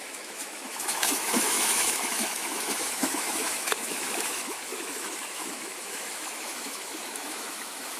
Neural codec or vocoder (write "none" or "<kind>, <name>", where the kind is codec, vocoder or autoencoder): autoencoder, DAC-VAE